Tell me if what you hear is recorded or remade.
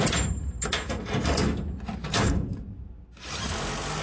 recorded